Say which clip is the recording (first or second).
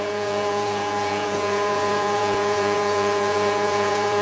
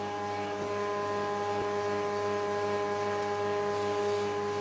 second